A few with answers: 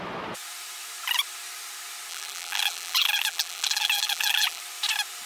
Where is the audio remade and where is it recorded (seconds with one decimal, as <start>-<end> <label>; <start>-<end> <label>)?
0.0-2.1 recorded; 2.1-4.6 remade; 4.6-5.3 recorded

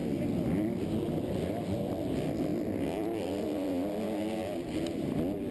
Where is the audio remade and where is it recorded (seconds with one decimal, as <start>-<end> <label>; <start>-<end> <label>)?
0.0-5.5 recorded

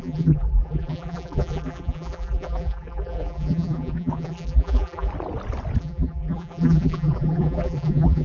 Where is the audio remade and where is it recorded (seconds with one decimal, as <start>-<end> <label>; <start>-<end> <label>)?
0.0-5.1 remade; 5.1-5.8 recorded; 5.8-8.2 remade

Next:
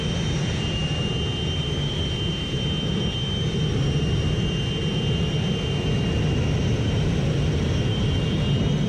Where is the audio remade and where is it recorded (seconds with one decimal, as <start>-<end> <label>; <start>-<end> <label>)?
0.0-8.9 recorded

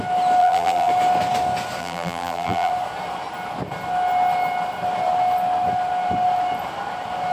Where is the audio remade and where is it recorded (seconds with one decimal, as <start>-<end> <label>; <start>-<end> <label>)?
0.0-0.4 recorded; 0.4-0.9 remade; 0.9-1.8 recorded; 1.8-2.7 remade; 2.7-7.3 recorded

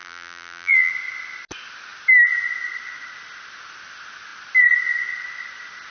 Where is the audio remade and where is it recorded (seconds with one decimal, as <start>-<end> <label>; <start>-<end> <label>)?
0.0-0.9 remade; 0.9-5.9 recorded

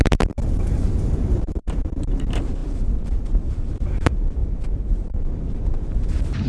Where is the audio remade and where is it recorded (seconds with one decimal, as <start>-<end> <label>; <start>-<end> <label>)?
0.0-6.5 remade

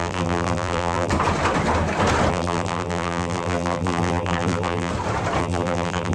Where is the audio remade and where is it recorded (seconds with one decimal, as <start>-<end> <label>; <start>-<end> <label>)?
0.0-1.1 remade; 1.1-2.3 recorded; 2.3-4.9 remade; 4.9-5.4 recorded; 5.4-6.1 remade